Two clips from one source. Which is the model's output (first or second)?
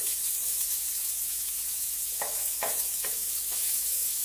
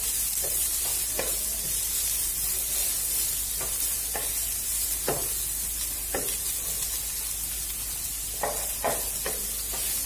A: first